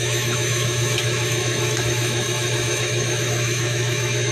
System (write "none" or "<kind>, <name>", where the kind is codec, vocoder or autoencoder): autoencoder, DAC-VAE